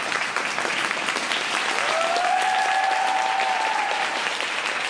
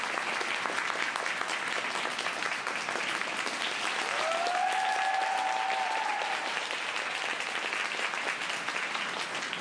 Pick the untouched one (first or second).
second